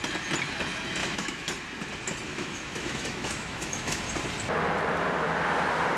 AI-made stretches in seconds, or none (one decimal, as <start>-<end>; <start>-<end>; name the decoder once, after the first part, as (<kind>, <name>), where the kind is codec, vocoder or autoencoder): 1.0-1.5 (autoencoder, DAC-VAE); 2.3-4.0